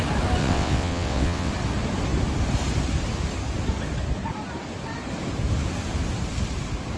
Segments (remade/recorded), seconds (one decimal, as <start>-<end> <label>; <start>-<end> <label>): 0.0-0.4 recorded; 0.4-1.5 remade; 1.5-7.0 recorded